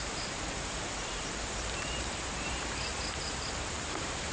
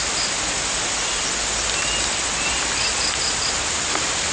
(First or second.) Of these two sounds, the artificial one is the first